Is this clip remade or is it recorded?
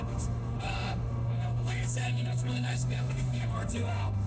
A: remade